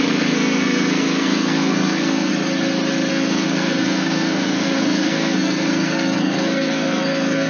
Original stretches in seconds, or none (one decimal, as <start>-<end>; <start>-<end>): 2.3-3.1